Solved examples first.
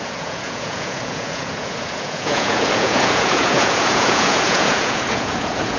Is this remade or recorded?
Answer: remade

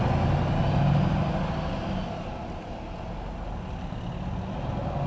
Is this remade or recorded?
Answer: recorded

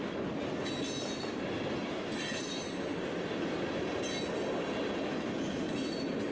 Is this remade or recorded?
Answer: recorded